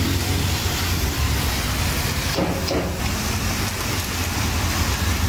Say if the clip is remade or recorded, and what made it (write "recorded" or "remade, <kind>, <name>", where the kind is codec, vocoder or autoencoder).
recorded